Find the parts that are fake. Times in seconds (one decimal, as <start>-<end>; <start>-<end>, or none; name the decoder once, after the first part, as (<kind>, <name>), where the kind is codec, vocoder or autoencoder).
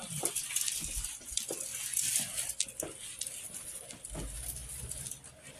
none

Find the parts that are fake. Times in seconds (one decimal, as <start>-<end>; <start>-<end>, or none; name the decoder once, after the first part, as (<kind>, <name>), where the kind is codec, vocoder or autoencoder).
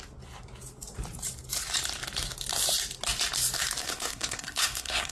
3.8-5.1 (codec, SNAC)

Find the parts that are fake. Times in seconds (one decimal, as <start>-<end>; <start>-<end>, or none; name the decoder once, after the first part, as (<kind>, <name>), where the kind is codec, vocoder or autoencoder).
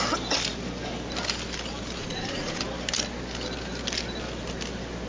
2.0-2.6 (vocoder, Vocos)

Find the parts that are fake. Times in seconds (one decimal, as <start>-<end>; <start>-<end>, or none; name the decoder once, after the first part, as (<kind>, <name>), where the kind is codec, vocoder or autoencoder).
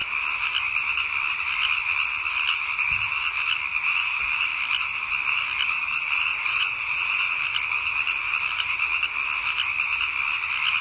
6.3-7.4 (vocoder, Vocos)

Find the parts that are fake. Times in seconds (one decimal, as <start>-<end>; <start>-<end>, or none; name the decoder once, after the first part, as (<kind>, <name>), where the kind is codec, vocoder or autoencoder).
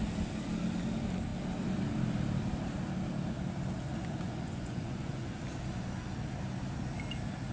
3.9-5.4 (vocoder, Vocos)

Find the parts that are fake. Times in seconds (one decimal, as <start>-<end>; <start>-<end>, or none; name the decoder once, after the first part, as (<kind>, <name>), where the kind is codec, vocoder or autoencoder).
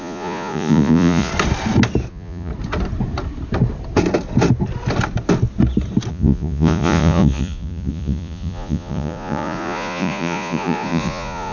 0.0-1.3 (vocoder, Vocos); 2.1-2.5; 6.1-11.5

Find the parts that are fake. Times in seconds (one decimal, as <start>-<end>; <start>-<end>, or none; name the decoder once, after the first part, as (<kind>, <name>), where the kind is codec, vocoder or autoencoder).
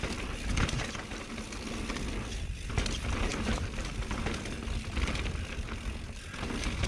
3.3-3.9 (vocoder, BigVGAN v2)